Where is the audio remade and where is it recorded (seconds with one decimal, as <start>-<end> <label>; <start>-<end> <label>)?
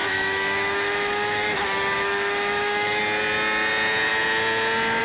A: 0.0-3.0 remade; 3.0-5.0 recorded